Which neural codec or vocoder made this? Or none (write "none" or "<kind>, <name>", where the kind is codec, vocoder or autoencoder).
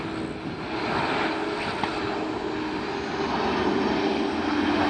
none